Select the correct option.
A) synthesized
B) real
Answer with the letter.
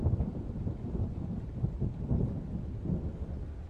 B